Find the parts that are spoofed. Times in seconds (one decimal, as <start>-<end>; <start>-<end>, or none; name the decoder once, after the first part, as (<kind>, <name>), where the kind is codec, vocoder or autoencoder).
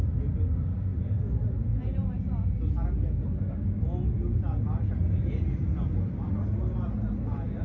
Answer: none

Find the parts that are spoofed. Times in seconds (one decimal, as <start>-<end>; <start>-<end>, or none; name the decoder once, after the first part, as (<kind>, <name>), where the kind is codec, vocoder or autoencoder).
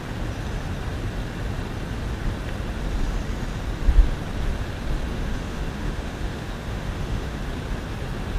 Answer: 5.1-7.4 (autoencoder, DAC-VAE)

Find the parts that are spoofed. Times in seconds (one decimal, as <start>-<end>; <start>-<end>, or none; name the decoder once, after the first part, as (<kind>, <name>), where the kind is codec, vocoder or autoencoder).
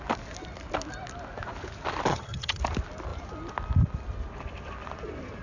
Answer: 2.1-2.6 (vocoder, HiFi-GAN)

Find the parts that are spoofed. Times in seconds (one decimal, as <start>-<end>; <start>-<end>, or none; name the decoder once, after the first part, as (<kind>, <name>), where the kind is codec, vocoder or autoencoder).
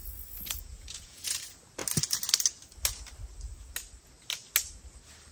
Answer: 0.0-1.4 (vocoder, Vocos)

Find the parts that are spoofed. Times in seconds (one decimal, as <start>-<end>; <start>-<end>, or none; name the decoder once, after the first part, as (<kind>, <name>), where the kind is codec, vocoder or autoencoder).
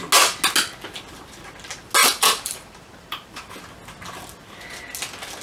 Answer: 2.0-3.5 (vocoder, BigVGAN v2)